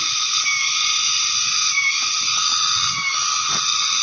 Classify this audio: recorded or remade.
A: recorded